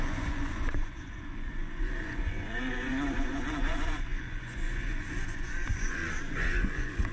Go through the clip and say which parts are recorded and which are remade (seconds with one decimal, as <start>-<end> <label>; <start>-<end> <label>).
0.0-7.1 remade